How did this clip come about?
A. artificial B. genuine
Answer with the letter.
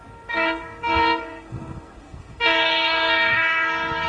A